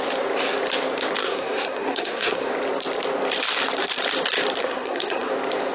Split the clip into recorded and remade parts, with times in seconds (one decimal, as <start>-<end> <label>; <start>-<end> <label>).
0.0-1.2 recorded; 1.2-2.5 remade; 2.5-4.6 recorded; 4.6-5.3 remade; 5.3-5.7 recorded